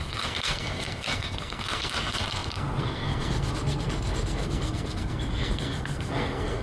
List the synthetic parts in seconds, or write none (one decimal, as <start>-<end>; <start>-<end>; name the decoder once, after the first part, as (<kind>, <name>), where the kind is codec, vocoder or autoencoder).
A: 0.0-6.6 (codec, SNAC)